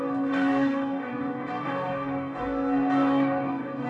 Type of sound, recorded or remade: remade